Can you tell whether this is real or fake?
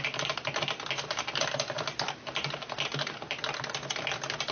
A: real